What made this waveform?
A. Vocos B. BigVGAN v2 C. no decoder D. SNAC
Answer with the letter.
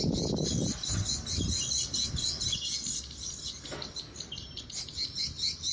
C